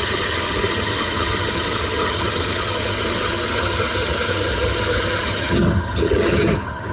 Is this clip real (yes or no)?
no